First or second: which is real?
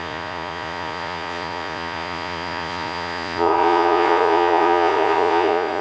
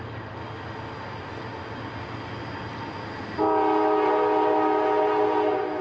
second